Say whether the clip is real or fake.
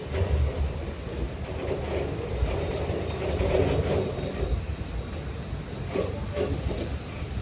real